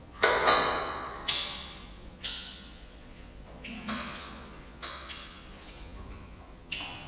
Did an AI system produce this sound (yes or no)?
yes